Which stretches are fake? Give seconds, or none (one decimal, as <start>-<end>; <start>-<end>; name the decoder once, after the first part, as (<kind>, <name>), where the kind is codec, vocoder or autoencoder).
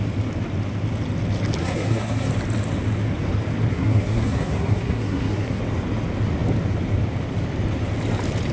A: 1.6-2.3 (codec, SNAC); 3.7-5.6